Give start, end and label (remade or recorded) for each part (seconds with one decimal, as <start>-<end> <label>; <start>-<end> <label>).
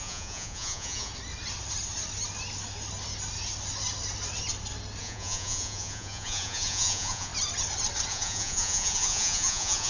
0.0-1.1 remade; 1.1-5.0 recorded; 5.0-7.3 remade; 7.3-8.1 recorded; 8.1-9.9 remade